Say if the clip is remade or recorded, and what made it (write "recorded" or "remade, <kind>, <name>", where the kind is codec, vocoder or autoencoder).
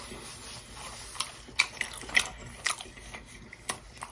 recorded